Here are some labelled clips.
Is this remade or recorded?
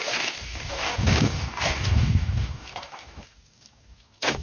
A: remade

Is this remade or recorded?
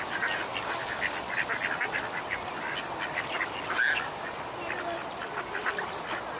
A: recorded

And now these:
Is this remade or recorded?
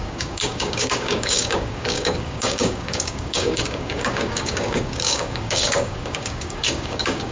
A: remade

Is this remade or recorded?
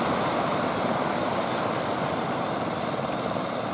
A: recorded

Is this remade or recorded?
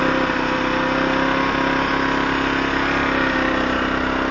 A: recorded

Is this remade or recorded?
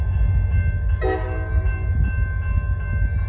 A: recorded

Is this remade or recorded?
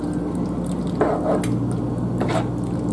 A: recorded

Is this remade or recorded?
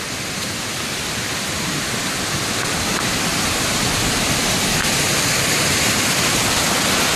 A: recorded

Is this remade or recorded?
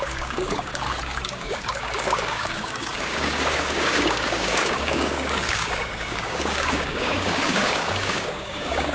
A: remade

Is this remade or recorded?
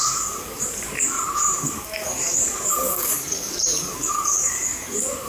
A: remade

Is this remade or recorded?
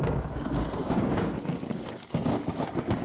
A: remade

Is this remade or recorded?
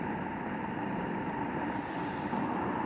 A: recorded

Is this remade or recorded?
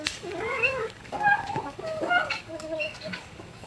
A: remade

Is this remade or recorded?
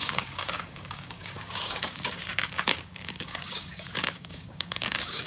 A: remade